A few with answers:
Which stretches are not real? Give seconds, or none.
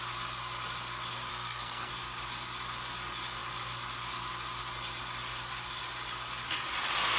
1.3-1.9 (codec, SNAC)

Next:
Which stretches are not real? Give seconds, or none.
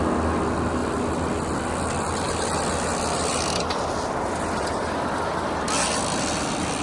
none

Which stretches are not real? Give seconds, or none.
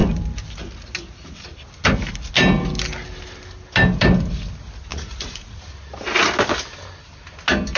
4.9-5.6 (vocoder, Vocos)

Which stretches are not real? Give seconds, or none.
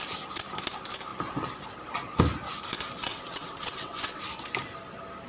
3.1-4.2 (vocoder, WaveNeXt)